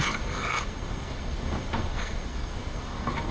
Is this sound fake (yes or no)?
yes